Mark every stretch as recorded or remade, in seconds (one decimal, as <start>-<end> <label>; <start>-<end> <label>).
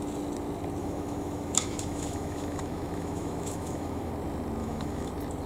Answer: 0.0-0.8 recorded; 0.8-4.1 remade; 4.1-4.6 recorded; 4.6-5.1 remade; 5.1-5.5 recorded